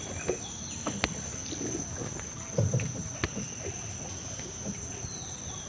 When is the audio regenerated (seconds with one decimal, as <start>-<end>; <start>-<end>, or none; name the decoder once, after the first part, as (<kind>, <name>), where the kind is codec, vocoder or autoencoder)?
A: none